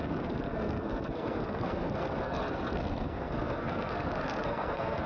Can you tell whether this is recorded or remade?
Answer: remade